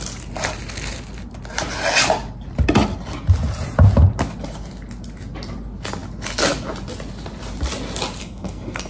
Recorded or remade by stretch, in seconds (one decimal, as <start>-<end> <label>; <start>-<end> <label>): 0.0-8.2 recorded; 8.2-8.9 remade